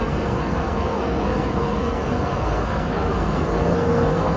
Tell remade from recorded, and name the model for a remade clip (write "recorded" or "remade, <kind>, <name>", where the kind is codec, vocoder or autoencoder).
remade, codec, SNAC